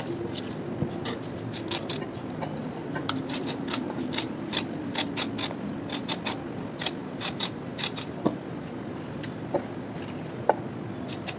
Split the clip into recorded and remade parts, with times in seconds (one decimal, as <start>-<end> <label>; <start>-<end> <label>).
0.0-2.6 recorded; 2.6-4.5 remade; 4.5-7.0 recorded; 7.0-8.5 remade; 8.5-11.4 recorded